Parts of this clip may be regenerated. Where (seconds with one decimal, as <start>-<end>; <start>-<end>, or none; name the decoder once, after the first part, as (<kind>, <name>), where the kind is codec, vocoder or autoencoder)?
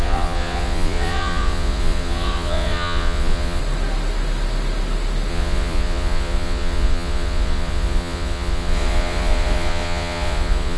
0.0-3.6 (vocoder, Vocos); 5.3-10.8